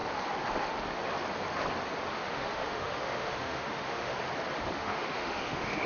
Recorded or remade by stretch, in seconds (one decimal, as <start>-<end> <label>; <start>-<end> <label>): 0.0-2.1 recorded; 2.1-4.2 remade; 4.2-4.7 recorded; 4.7-5.9 remade